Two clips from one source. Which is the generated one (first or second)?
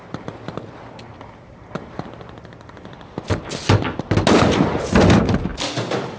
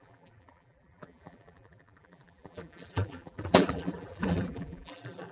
second